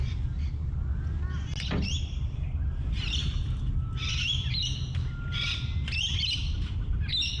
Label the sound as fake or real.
real